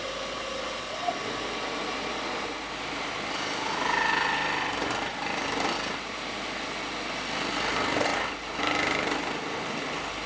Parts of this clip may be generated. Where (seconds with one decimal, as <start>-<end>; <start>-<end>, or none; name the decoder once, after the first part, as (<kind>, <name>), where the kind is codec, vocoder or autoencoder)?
none